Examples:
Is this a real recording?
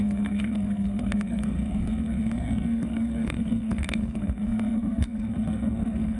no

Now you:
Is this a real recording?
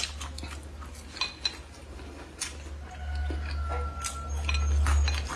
yes